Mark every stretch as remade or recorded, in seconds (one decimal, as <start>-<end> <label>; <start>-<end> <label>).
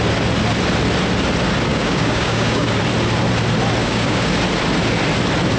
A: 0.0-1.7 recorded; 1.7-2.8 remade; 2.8-3.8 recorded; 3.8-4.3 remade; 4.3-5.6 recorded